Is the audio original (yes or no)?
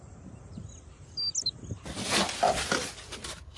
yes